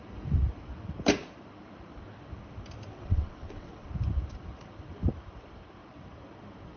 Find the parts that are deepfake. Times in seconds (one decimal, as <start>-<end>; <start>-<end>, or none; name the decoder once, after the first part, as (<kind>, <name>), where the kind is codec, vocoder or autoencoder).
2.9-3.9 (vocoder, WaveNeXt)